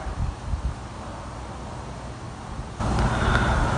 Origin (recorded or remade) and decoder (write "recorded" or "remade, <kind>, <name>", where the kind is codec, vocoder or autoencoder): recorded